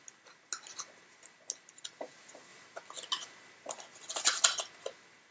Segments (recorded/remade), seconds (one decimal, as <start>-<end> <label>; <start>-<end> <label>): 0.0-5.3 recorded